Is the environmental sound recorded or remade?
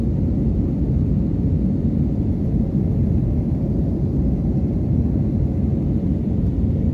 recorded